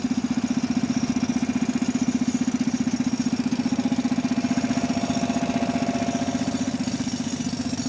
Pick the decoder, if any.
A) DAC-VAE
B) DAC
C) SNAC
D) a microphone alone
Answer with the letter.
D